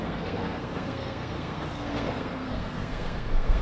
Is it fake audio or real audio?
fake